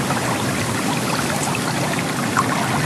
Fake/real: real